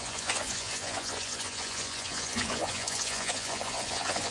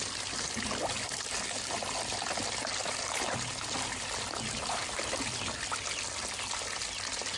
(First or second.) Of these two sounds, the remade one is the first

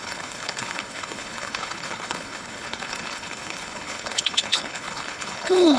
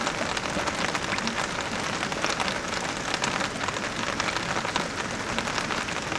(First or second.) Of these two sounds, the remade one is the first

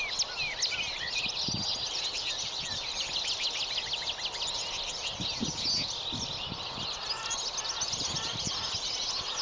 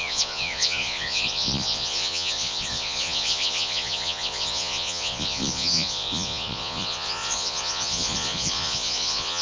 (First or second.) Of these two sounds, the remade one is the second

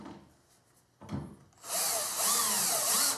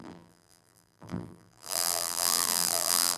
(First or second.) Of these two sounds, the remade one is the second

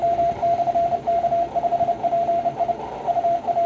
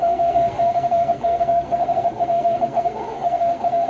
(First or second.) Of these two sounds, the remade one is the second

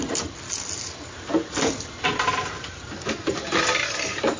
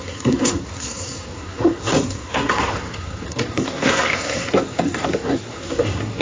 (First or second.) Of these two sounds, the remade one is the second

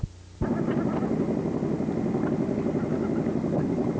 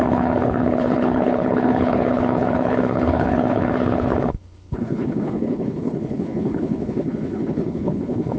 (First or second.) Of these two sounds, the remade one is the second